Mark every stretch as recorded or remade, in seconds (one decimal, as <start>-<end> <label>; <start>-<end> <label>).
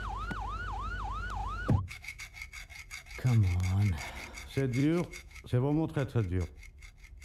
0.0-1.4 recorded; 1.4-2.2 remade; 2.2-4.8 recorded; 4.8-5.5 remade; 5.5-7.2 recorded